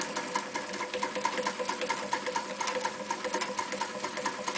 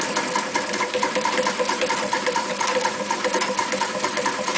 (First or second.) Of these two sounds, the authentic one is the first